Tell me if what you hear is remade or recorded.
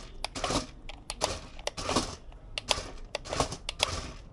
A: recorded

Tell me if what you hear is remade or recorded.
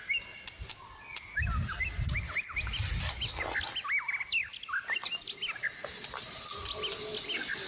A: recorded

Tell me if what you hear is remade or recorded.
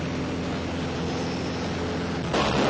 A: recorded